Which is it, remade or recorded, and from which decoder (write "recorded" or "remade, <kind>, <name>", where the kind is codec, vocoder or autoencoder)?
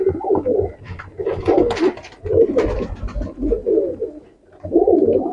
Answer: recorded